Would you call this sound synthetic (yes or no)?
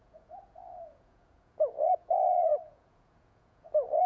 yes